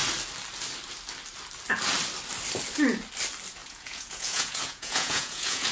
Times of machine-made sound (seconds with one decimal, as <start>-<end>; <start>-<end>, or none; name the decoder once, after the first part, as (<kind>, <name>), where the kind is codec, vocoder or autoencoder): 3.6-5.7 (vocoder, Vocos)